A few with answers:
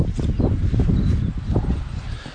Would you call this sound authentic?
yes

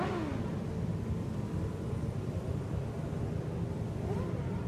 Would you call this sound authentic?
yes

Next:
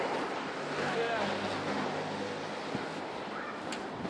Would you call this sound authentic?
yes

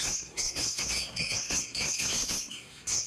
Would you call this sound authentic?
no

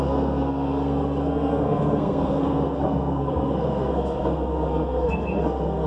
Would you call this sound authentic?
no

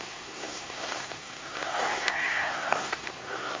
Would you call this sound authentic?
no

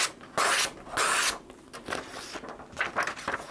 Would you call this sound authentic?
yes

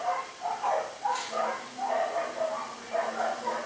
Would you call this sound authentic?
yes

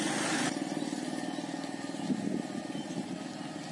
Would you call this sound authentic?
yes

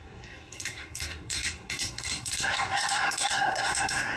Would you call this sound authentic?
no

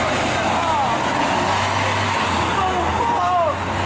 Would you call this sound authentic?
yes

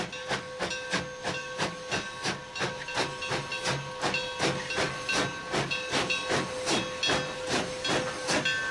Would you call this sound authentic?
yes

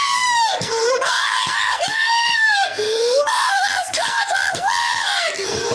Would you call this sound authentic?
no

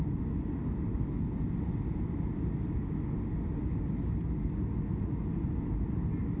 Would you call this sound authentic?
yes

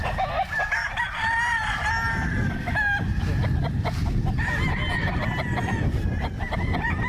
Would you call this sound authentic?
yes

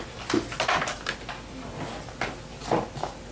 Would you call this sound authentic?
yes